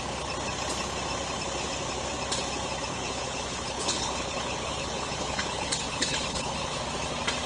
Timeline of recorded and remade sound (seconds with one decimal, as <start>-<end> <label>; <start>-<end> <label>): 0.0-2.9 recorded; 2.9-6.8 remade; 6.8-7.5 recorded